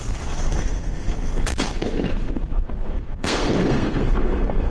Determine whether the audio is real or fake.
fake